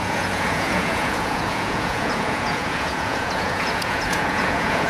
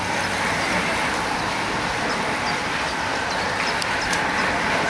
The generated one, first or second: first